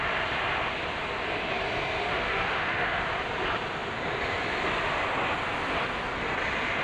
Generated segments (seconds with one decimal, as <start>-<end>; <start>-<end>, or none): 2.0-3.0